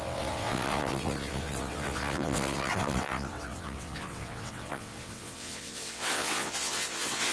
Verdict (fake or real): fake